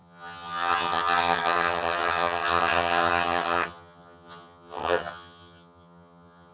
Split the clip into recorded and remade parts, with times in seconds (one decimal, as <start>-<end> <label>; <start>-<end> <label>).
0.0-6.5 remade